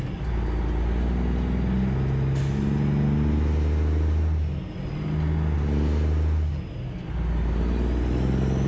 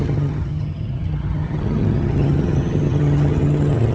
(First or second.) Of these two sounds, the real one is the first